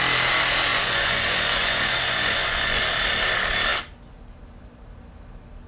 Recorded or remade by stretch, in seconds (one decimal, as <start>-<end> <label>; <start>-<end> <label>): 0.0-0.7 recorded; 0.7-2.8 remade; 2.8-5.7 recorded